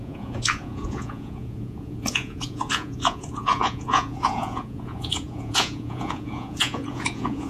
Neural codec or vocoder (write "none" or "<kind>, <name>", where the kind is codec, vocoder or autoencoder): vocoder, Vocos